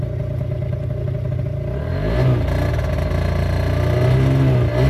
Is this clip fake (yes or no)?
no